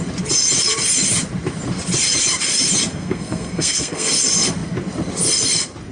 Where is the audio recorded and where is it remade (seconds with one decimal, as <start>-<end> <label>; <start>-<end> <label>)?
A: 0.0-2.9 recorded; 2.9-4.1 remade; 4.1-5.9 recorded

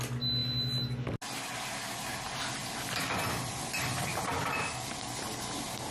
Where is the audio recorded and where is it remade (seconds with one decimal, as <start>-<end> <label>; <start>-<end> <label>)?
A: 0.0-5.9 recorded